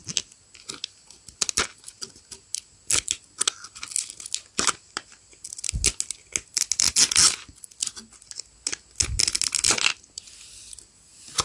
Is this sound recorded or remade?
recorded